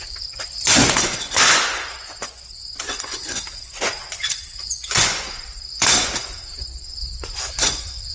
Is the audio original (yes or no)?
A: no